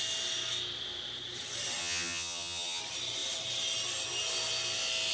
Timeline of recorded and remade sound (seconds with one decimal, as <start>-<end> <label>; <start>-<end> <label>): 0.0-1.8 recorded; 1.8-2.8 remade; 2.8-5.1 recorded